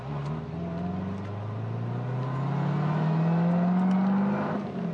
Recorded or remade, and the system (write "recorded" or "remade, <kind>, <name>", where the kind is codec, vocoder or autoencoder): recorded